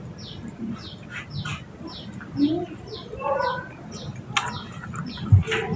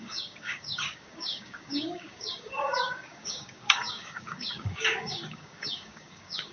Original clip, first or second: first